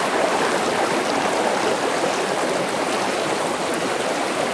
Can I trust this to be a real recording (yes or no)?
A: yes